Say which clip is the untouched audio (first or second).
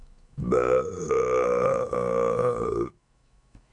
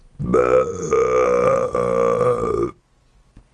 second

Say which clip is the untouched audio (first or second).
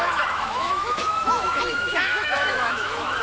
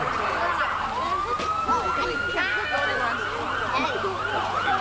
second